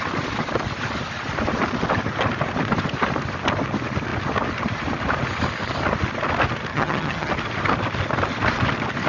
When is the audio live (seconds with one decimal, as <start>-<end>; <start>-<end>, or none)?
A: 0.0-6.7; 7.3-9.1